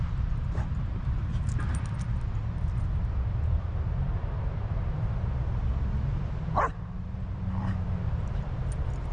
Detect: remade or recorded recorded